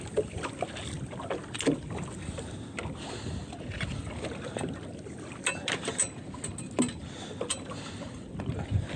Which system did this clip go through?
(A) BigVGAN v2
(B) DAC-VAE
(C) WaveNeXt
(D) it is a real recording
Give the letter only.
D